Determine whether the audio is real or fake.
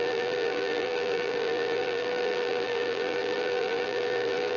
fake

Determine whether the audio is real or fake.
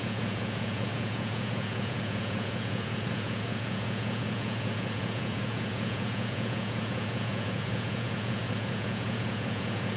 fake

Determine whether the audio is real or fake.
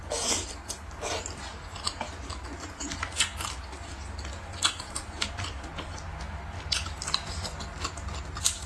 real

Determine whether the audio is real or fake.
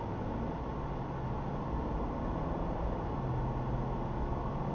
real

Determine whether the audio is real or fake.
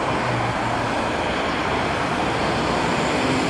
real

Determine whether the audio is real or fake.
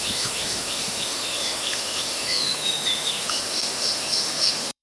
fake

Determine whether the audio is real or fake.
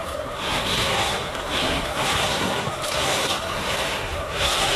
fake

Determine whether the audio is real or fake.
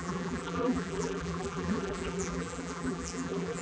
fake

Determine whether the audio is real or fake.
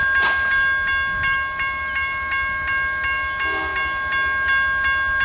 real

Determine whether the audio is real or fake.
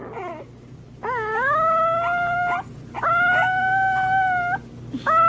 real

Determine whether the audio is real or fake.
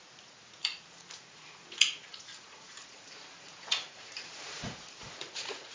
fake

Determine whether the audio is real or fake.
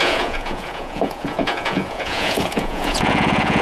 fake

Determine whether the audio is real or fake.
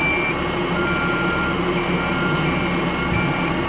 real